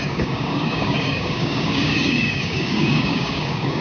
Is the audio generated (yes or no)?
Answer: yes